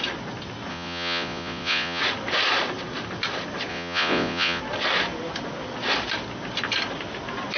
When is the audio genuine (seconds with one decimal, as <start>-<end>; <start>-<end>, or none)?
0.0-0.7; 2.0-3.7; 4.6-7.6